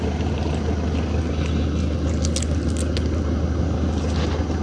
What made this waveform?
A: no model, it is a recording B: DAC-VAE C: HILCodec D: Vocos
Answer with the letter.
A